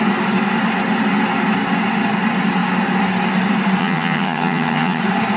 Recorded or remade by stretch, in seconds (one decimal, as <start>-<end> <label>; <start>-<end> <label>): 0.0-3.8 recorded; 3.8-5.0 remade; 5.0-5.4 recorded